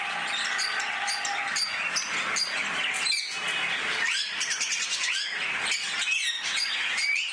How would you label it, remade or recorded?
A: recorded